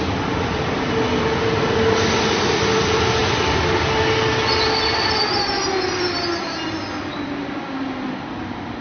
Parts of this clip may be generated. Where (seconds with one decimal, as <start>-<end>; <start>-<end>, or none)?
none